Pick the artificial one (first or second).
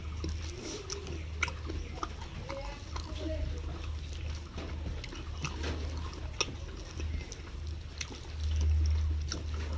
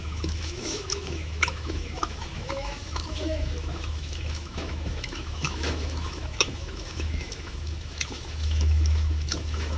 second